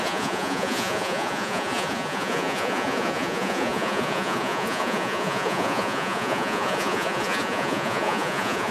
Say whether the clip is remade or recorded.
remade